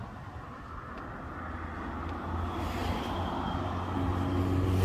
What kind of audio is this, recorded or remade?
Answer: recorded